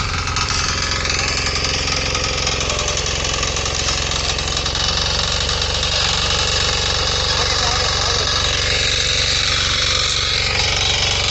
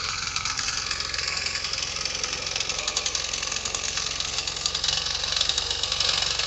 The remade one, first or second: second